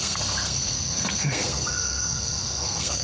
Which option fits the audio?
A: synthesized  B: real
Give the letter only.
A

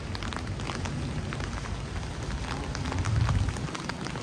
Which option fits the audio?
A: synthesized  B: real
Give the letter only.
B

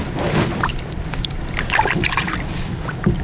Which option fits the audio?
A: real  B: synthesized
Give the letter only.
A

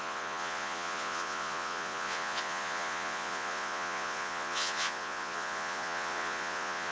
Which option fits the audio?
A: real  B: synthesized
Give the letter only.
B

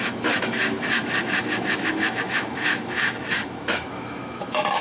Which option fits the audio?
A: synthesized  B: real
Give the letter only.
A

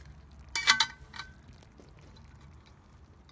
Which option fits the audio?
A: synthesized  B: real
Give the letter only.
B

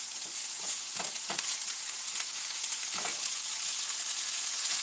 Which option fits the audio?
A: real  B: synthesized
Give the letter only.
B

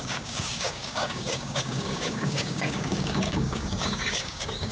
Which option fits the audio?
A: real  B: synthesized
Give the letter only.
B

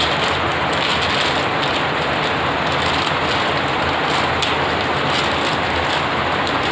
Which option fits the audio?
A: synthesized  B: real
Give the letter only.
B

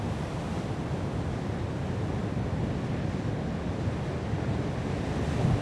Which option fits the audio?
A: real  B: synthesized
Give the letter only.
A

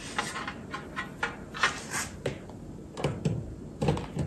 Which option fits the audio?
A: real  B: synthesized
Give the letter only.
A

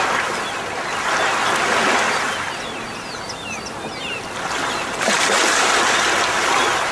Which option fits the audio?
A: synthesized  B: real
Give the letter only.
B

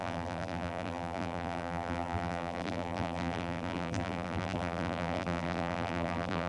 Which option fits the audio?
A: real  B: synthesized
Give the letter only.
B